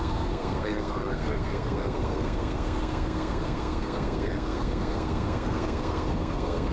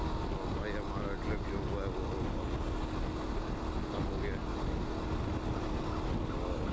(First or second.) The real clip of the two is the second